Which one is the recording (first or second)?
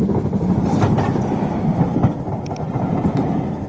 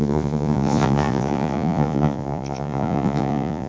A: first